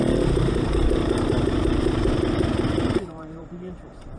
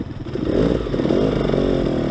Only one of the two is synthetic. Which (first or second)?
first